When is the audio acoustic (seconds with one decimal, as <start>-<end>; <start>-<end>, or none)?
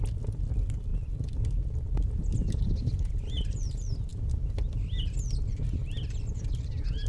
0.0-7.1